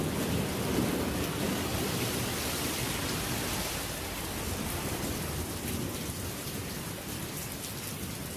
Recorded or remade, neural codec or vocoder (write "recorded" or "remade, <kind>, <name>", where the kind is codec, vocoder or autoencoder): recorded